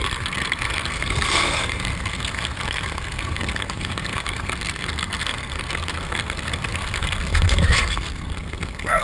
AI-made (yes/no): yes